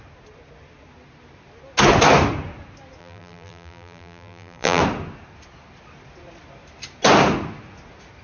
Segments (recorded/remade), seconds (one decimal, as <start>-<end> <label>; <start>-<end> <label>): 0.0-3.0 recorded; 3.0-4.8 remade; 4.8-8.2 recorded